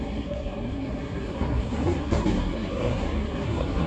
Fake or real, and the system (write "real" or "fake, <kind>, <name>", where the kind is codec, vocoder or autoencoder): fake, codec, SNAC